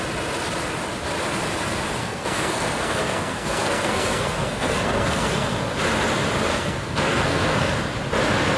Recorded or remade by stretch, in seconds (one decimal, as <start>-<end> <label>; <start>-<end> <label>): 0.0-2.0 recorded; 2.0-5.6 remade; 5.6-6.5 recorded; 6.5-7.7 remade; 7.7-8.6 recorded